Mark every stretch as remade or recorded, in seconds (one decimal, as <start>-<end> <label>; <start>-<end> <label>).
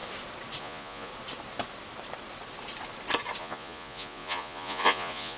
0.0-0.6 recorded; 0.6-1.1 remade; 1.1-3.4 recorded; 3.4-5.4 remade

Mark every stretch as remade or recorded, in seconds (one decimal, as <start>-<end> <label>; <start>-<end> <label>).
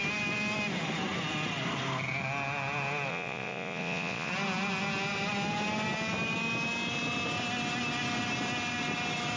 0.0-3.1 recorded; 3.1-4.3 remade; 4.3-9.4 recorded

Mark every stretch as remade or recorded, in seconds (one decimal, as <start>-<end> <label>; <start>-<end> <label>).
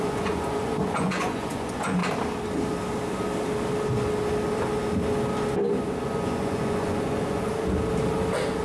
0.0-2.0 remade; 2.0-6.1 recorded; 6.1-7.5 remade; 7.5-8.6 recorded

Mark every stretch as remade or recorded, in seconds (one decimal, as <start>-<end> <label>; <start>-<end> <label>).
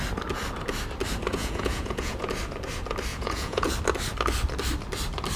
0.0-1.3 recorded; 1.3-2.3 remade; 2.3-3.1 recorded; 3.1-3.7 remade; 3.7-5.4 recorded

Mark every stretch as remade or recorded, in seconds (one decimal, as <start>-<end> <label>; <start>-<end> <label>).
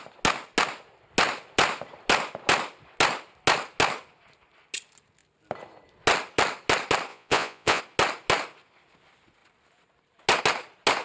0.0-7.1 recorded; 7.1-7.8 remade; 7.8-11.0 recorded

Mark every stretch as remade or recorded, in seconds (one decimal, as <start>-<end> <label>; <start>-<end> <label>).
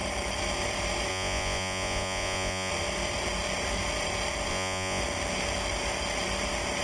0.0-1.1 recorded; 1.1-2.7 remade; 2.7-4.5 recorded; 4.5-5.0 remade; 5.0-6.8 recorded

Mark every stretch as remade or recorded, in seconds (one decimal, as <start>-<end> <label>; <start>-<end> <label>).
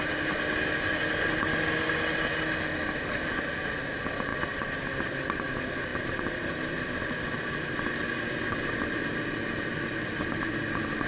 0.0-11.1 recorded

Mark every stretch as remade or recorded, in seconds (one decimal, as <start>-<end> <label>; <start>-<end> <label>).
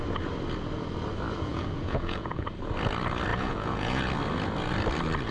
0.0-1.5 recorded; 1.5-2.5 remade; 2.5-3.3 recorded; 3.3-4.1 remade; 4.1-5.3 recorded